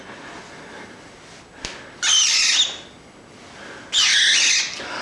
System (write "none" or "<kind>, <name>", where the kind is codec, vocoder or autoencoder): none